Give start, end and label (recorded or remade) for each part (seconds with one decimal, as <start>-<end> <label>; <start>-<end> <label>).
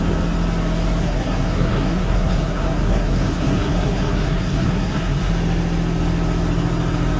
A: 0.0-1.0 recorded; 1.0-5.3 remade; 5.3-7.2 recorded